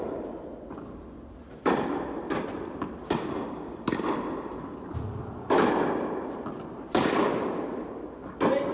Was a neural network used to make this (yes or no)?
no